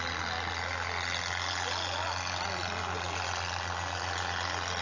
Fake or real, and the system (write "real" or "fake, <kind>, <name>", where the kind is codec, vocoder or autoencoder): real